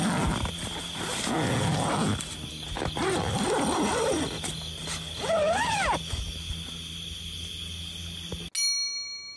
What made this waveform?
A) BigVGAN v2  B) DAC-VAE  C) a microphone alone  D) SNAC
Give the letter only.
C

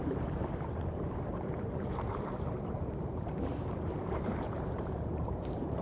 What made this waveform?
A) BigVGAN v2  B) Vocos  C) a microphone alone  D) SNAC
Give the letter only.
A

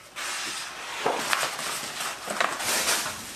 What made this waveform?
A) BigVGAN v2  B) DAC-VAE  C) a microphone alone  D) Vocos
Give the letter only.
C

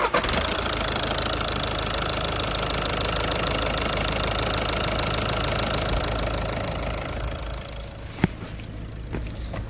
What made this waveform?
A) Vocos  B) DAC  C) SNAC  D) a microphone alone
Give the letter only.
D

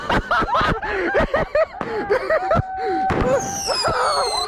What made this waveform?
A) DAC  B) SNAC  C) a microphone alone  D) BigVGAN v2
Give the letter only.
C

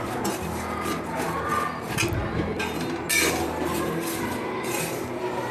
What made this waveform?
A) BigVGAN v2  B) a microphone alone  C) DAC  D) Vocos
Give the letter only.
B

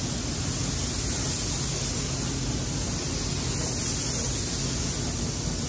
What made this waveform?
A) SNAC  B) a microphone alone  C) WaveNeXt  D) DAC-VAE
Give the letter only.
B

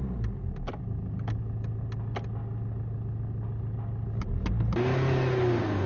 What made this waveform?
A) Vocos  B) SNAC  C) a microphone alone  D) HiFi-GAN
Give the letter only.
C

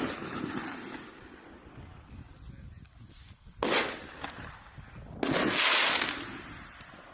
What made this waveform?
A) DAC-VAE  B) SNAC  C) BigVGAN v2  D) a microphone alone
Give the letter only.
D